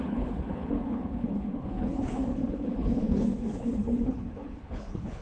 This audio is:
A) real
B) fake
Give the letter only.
B